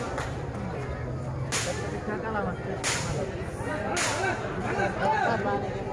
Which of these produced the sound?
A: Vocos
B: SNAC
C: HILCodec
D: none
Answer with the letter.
D